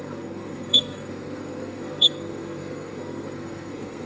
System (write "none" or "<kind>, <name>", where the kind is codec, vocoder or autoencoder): codec, SNAC